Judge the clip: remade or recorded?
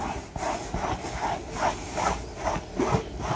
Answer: recorded